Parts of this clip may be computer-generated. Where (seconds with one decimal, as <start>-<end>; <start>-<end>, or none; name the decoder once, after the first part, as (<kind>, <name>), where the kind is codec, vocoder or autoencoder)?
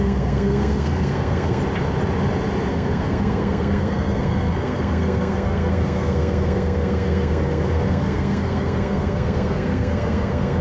0.0-1.6 (codec, SNAC); 2.7-10.6